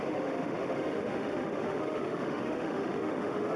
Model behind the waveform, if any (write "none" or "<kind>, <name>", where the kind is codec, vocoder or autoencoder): autoencoder, DAC-VAE